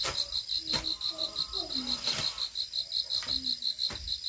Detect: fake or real real